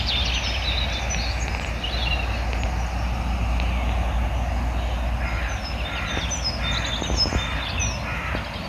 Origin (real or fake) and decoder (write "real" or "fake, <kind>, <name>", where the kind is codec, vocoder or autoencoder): real